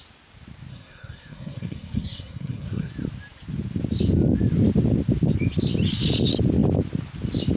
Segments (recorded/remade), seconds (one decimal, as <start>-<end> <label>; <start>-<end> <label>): 0.0-0.7 recorded; 0.7-2.9 remade; 2.9-7.6 recorded